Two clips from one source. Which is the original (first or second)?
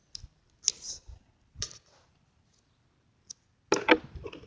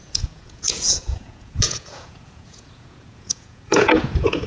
first